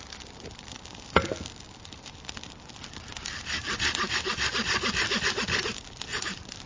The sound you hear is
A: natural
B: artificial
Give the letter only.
A